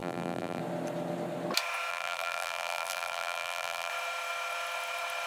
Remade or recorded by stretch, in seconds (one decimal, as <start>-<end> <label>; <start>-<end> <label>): 0.0-0.6 remade; 0.6-1.9 recorded; 1.9-3.9 remade; 3.9-5.3 recorded